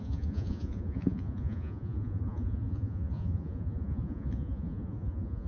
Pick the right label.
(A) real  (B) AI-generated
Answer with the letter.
B